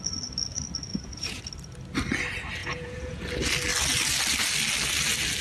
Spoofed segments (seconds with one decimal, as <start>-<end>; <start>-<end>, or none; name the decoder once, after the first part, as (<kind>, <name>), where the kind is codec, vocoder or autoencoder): 0.9-1.4 (vocoder, Vocos); 2.6-3.2